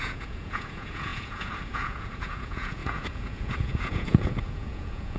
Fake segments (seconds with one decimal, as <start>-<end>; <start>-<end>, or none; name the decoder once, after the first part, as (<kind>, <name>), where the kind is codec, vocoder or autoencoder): 0.0-5.2 (vocoder, Vocos)